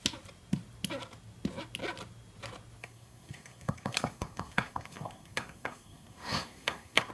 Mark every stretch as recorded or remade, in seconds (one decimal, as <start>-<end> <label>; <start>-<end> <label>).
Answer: 0.0-2.8 recorded; 2.8-7.1 remade